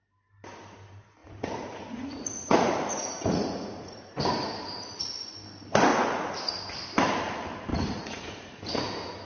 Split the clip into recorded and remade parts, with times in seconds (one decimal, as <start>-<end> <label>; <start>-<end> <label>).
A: 0.0-1.2 recorded; 1.2-4.2 remade; 4.2-5.9 recorded; 5.9-6.4 remade; 6.4-7.7 recorded; 7.7-8.7 remade; 8.7-9.3 recorded